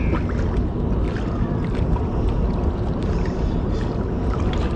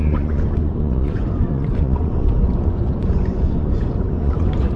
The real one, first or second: first